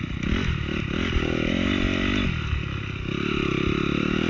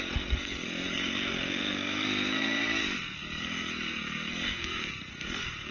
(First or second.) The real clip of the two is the first